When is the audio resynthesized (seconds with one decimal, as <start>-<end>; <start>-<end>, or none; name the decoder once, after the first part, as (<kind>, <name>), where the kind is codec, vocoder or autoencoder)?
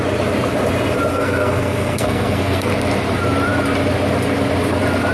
1.1-2.7 (codec, SNAC)